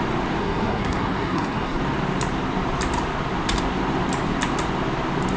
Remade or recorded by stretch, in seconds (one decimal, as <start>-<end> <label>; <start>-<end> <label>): 0.0-0.4 recorded; 0.4-1.8 remade; 1.8-5.4 recorded